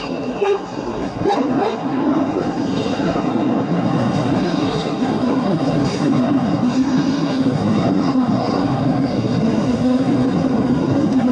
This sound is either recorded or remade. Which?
remade